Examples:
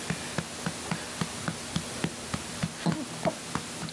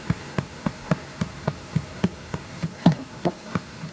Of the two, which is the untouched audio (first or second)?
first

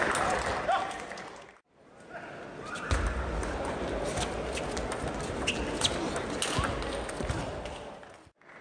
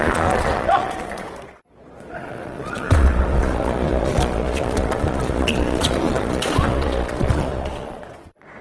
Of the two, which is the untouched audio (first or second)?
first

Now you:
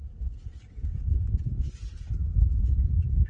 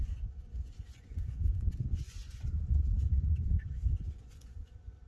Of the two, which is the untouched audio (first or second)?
first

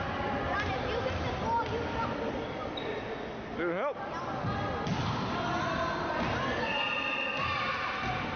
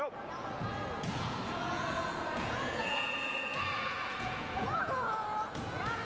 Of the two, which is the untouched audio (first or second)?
first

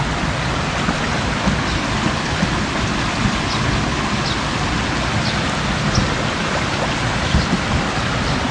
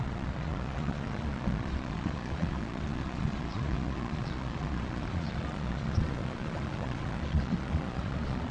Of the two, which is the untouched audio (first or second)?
first